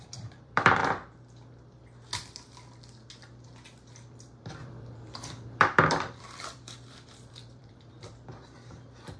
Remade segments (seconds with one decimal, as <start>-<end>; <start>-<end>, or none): 0.0-0.8; 3.9-9.2